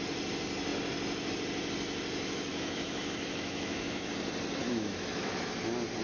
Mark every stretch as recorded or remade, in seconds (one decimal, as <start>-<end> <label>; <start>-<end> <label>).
0.0-2.5 recorded; 2.5-4.1 remade; 4.1-4.6 recorded; 4.6-5.5 remade; 5.5-6.0 recorded